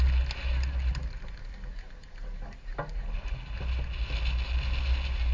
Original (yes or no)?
yes